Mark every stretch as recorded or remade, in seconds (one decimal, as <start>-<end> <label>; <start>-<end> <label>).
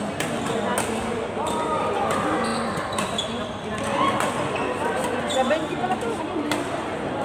0.0-7.2 recorded